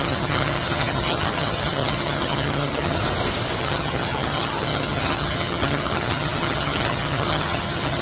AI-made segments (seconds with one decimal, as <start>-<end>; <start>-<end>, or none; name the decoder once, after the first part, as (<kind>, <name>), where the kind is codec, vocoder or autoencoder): 0.0-3.0 (vocoder, HiFi-GAN); 3.6-8.0